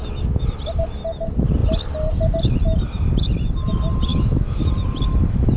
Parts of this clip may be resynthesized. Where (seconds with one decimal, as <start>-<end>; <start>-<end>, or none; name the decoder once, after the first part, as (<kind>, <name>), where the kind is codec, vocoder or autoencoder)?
4.1-4.7 (autoencoder, DAC-VAE)